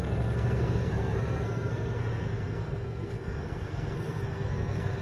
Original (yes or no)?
no